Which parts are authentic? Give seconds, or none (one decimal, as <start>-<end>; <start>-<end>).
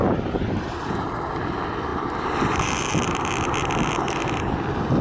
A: 1.1-1.9; 3.3-5.0